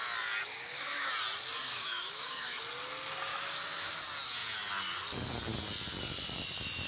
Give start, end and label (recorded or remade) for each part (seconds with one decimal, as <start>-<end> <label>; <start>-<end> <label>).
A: 0.0-0.5 recorded; 0.5-1.1 remade; 1.1-1.6 recorded; 1.6-2.6 remade; 2.6-3.3 recorded; 3.3-3.9 remade; 3.9-6.9 recorded